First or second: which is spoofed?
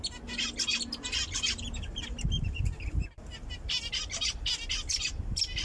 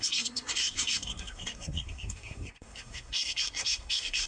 second